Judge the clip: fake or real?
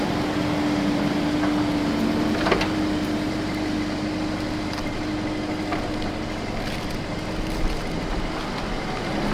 real